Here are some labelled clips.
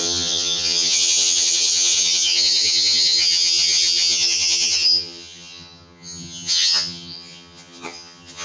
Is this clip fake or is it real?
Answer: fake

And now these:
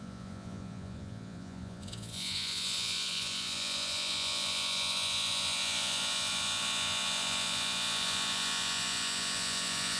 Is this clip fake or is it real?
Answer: fake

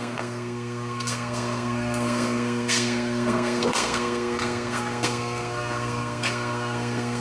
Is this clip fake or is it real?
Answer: fake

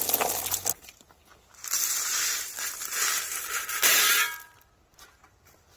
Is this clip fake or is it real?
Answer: real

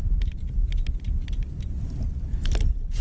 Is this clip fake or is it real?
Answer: real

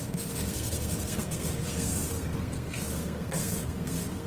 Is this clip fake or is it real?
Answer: fake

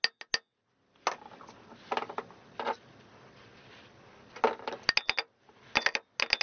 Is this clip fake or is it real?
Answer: real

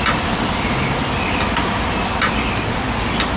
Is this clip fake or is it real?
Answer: real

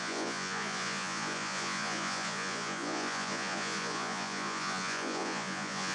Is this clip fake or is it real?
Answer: fake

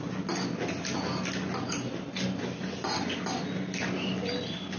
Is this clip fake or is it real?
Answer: real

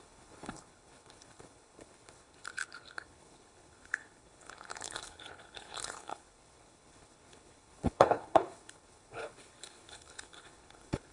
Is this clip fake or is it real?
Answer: fake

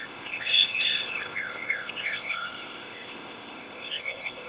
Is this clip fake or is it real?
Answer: fake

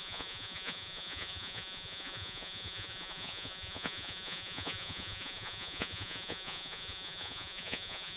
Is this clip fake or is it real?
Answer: fake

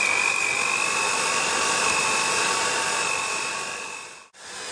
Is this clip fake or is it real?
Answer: real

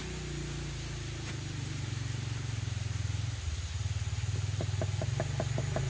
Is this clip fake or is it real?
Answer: real